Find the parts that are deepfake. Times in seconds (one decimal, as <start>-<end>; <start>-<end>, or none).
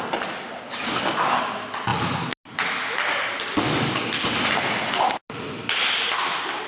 none